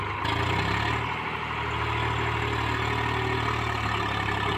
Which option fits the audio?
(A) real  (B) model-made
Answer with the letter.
A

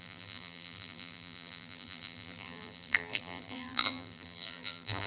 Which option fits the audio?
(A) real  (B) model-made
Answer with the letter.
B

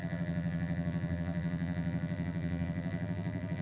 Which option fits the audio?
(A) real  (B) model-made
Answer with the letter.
B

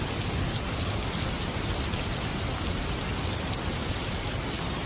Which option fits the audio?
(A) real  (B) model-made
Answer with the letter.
A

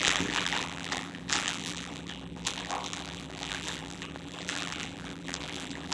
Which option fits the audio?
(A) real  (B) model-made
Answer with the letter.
B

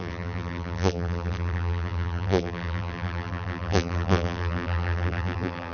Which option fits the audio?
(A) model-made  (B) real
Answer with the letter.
A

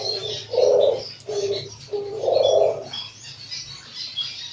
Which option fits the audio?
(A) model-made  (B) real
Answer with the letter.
B